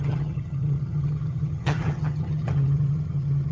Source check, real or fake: fake